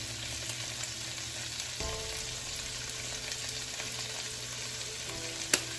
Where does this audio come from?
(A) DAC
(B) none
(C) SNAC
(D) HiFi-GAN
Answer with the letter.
B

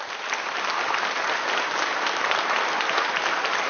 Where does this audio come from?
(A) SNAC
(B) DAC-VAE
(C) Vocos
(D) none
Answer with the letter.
D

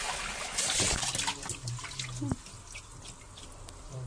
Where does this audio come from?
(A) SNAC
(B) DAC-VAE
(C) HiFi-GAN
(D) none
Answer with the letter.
D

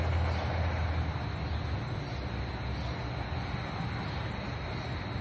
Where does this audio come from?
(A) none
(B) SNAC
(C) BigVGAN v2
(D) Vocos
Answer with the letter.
A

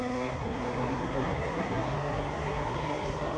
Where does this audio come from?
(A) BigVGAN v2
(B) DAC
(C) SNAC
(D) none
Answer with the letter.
C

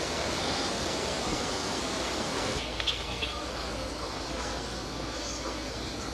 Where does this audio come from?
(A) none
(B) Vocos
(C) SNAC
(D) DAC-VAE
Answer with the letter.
C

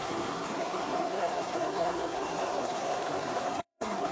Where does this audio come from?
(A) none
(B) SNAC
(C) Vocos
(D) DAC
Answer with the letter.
B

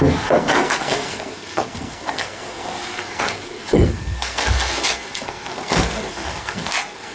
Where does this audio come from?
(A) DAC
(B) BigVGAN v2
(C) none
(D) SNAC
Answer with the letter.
D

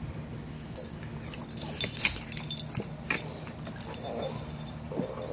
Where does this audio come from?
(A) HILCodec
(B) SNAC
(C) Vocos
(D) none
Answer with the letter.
D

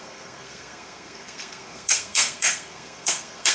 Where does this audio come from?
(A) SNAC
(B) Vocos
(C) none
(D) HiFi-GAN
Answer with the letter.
A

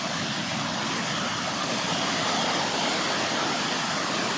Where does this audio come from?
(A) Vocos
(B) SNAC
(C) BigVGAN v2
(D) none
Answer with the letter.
D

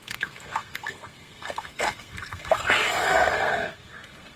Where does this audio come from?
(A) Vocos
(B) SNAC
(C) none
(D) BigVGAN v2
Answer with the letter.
B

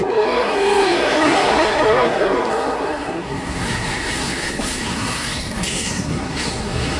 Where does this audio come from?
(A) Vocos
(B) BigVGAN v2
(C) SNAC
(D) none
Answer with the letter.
C